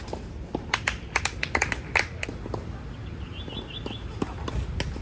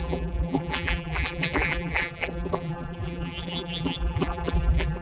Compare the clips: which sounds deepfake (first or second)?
second